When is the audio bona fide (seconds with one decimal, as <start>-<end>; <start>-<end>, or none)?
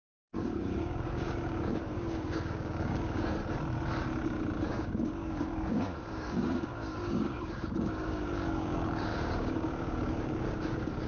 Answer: 3.4-4.7